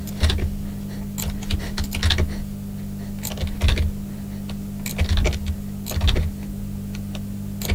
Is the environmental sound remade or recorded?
recorded